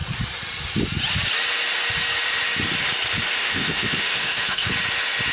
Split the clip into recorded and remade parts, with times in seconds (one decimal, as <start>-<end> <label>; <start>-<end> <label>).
0.0-3.4 recorded; 3.4-4.7 remade; 4.7-5.3 recorded